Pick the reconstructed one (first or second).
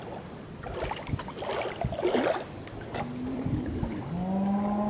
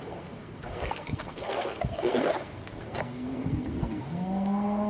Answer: second